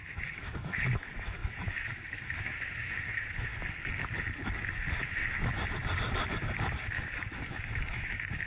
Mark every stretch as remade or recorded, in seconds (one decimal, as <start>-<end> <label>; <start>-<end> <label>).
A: 0.0-3.5 remade; 3.5-6.8 recorded; 6.8-8.5 remade